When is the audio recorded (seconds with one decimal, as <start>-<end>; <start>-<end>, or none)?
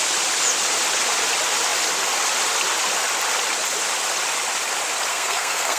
0.0-5.1